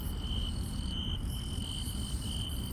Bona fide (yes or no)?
yes